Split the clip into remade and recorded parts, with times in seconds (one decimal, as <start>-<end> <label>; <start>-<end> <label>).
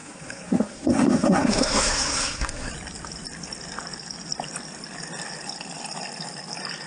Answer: 0.0-2.7 remade; 2.7-6.9 recorded